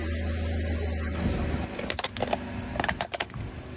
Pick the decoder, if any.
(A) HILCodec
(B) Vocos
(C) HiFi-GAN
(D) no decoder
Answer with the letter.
D